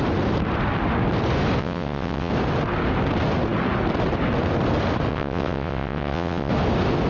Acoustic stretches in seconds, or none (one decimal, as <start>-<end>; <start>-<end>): 0.0-1.6; 2.3-5.1; 6.5-7.1